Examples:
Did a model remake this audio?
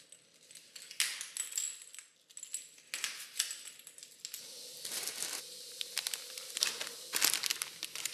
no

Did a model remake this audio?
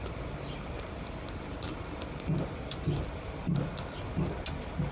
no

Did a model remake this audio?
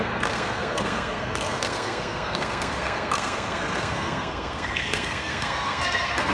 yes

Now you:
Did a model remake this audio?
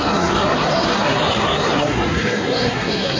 yes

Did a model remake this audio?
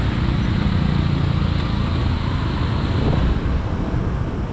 no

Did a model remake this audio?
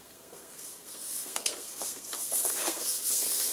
yes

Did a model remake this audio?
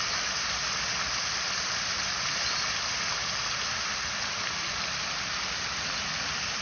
no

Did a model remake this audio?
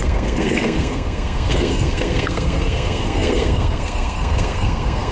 yes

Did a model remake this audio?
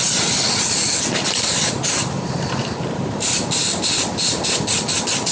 no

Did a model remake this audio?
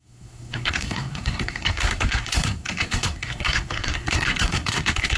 yes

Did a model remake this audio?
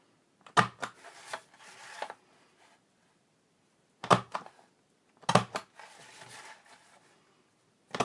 no